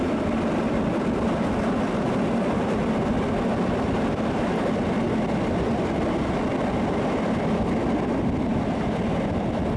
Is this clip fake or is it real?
real